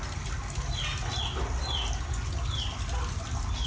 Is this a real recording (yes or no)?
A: yes